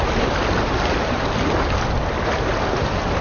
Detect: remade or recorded recorded